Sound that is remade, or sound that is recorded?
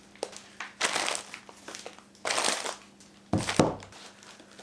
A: recorded